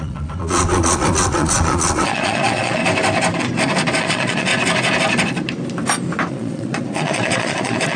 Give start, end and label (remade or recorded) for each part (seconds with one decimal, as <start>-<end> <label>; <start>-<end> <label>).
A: 0.0-2.8 remade; 2.8-4.0 recorded; 4.0-4.5 remade; 4.5-6.3 recorded; 6.3-8.0 remade